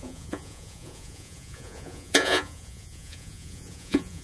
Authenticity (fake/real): fake